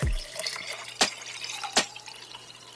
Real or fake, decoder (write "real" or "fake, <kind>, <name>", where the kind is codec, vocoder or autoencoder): real